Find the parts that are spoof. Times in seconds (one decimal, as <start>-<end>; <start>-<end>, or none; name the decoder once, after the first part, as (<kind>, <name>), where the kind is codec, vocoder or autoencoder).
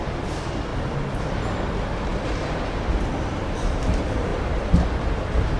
0.7-1.2 (vocoder, BigVGAN v2); 4.3-4.9